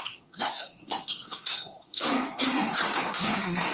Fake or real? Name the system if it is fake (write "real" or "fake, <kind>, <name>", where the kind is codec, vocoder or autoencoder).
fake, codec, SNAC